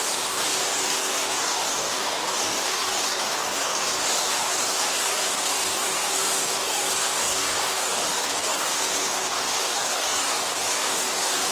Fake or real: fake